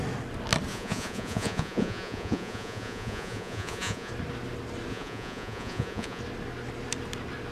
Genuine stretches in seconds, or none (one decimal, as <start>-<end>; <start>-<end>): 0.0-0.7; 4.1-4.9; 6.2-7.5